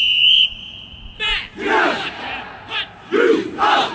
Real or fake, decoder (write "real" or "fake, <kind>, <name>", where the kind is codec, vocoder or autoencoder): real